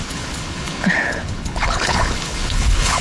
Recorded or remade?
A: remade